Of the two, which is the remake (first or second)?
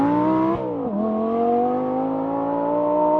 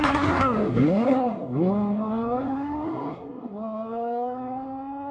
second